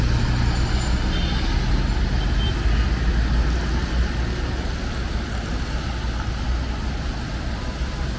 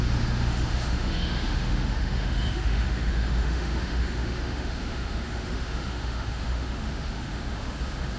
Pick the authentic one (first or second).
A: first